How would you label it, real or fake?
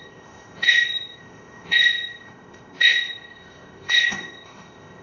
fake